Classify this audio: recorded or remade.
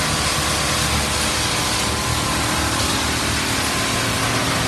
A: recorded